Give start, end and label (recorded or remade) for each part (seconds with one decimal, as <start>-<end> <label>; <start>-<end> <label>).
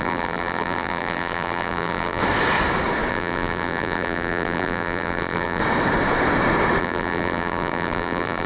0.0-2.2 remade; 2.2-3.1 recorded; 3.1-5.6 remade; 5.6-6.8 recorded; 6.8-8.5 remade